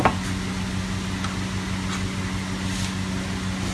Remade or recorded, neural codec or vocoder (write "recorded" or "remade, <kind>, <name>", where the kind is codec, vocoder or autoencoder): recorded